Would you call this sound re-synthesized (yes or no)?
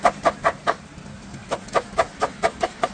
no